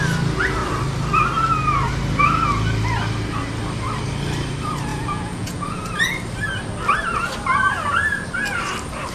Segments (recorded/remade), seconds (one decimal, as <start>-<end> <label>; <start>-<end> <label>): 0.0-4.9 recorded; 4.9-5.8 remade; 5.8-9.1 recorded